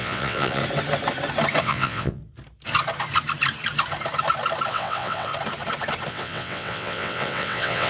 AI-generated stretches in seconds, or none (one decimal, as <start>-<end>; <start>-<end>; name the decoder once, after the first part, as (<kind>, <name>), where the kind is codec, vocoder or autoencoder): 0.0-0.6 (vocoder, WaveNeXt); 1.6-2.2; 4.7-5.3; 6.1-7.9